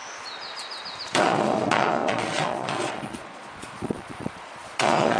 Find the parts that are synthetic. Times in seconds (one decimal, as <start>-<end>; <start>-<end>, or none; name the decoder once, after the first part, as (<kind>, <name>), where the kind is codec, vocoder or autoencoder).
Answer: 1.2-5.2 (vocoder, Vocos)